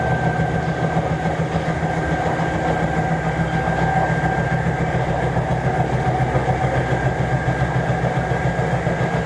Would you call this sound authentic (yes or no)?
yes